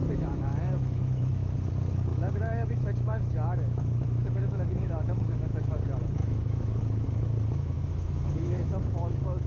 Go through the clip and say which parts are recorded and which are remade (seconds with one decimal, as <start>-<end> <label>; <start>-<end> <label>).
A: 0.0-1.7 remade; 1.7-2.1 recorded; 2.1-5.7 remade; 5.7-6.2 recorded; 6.2-9.5 remade

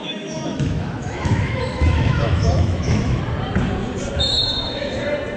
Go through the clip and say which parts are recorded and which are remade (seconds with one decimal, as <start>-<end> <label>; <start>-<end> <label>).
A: 0.0-3.2 remade; 3.2-4.4 recorded; 4.4-4.9 remade; 4.9-5.4 recorded

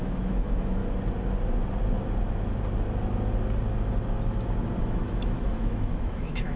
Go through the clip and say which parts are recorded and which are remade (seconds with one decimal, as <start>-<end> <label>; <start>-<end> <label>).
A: 0.0-0.8 remade; 0.8-4.8 recorded; 4.8-6.6 remade

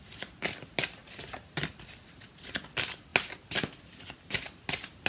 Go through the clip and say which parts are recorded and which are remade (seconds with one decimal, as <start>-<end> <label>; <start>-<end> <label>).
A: 0.0-5.1 recorded

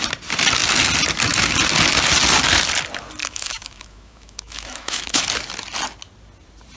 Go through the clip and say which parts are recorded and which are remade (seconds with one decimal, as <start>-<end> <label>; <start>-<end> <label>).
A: 0.0-3.2 recorded; 3.2-5.2 remade; 5.2-6.8 recorded